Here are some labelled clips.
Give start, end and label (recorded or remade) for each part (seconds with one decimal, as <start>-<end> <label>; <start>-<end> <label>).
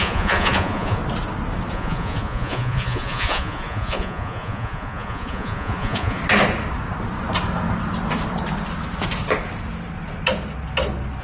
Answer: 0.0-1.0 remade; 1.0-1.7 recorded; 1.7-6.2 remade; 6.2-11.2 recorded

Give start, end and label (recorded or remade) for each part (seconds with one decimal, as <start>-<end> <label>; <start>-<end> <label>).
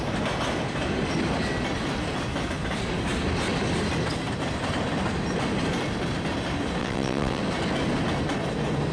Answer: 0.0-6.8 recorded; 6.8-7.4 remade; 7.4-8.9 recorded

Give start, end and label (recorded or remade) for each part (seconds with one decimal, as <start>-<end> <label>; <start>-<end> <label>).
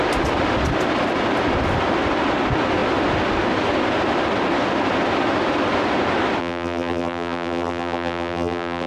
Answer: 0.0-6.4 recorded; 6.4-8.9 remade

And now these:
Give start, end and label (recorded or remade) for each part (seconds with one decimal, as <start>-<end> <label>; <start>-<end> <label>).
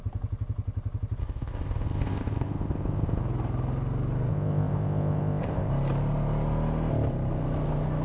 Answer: 0.0-1.2 recorded; 1.2-3.2 remade; 3.2-4.3 recorded; 4.3-5.7 remade; 5.7-8.0 recorded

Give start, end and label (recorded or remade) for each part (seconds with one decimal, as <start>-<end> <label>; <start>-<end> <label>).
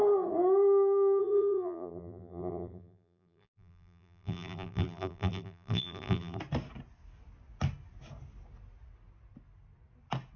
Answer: 0.0-1.2 recorded; 1.2-6.4 remade; 6.4-10.4 recorded